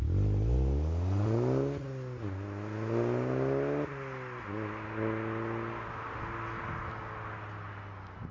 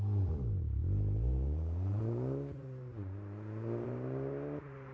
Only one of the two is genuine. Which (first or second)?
first